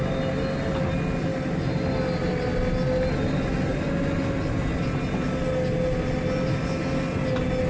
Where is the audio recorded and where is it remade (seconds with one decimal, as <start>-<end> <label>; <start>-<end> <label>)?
0.0-7.7 recorded